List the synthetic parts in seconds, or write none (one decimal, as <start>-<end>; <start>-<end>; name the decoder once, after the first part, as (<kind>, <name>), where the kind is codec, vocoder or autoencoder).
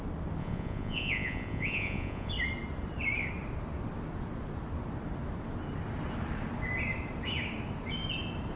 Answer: 0.4-2.3 (vocoder, Vocos)